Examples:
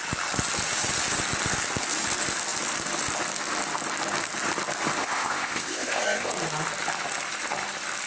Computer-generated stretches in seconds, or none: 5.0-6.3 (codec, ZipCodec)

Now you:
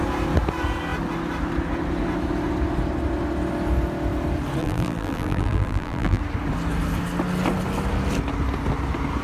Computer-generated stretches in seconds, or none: 4.6-6.2 (vocoder, BigVGAN v2)

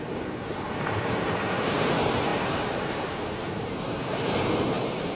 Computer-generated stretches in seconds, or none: 2.3-5.1 (vocoder, BigVGAN v2)